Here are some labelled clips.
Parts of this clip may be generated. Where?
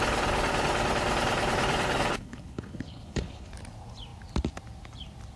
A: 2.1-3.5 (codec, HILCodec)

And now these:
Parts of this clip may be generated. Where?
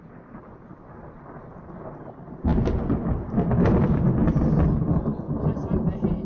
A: none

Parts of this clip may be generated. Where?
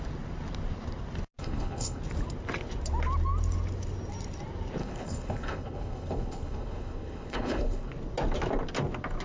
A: 1.4-2.0 (codec, HILCodec); 4.8-7.9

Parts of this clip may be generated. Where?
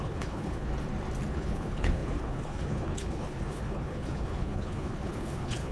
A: 0.0-0.7 (codec, HILCodec); 1.3-5.7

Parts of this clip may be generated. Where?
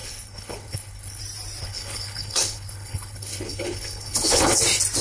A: 0.0-1.2 (codec, HILCodec); 1.6-4.6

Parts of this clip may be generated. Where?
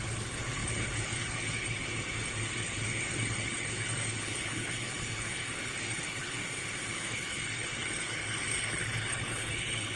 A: 0.0-6.4 (codec, HILCodec); 6.9-10.0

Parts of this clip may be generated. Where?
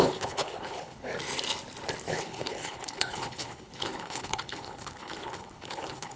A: 0.0-1.1 (codec, HILCodec); 2.1-6.2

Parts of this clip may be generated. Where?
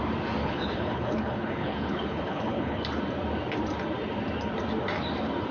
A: 0.4-2.8 (codec, HILCodec)